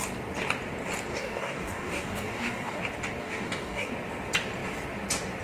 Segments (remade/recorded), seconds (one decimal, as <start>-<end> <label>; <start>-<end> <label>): 0.0-1.1 recorded; 1.1-2.8 remade; 2.8-3.2 recorded; 3.2-3.9 remade; 3.9-5.4 recorded